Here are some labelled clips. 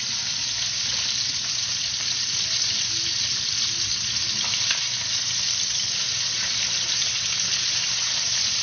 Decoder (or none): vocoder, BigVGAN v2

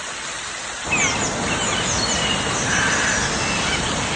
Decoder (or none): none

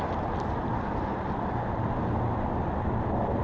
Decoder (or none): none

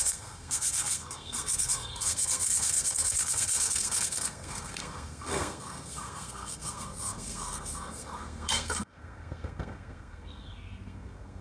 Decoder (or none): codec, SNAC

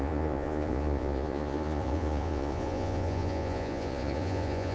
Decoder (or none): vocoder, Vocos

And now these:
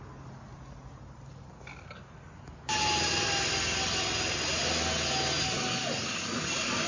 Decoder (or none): none